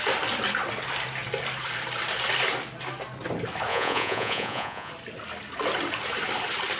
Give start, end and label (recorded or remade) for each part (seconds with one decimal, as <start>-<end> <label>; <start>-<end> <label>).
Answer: 0.0-3.7 recorded; 3.7-4.9 remade; 4.9-6.8 recorded